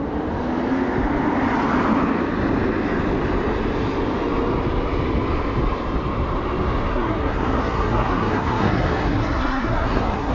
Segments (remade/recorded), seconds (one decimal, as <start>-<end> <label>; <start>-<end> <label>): 0.0-6.9 recorded; 6.9-10.3 remade